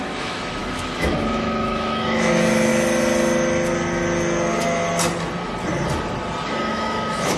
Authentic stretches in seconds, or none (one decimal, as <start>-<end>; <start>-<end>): 2.7-6.7